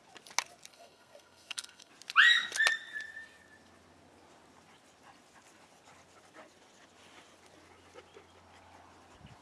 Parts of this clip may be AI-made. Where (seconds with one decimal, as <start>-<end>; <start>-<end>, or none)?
0.7-1.9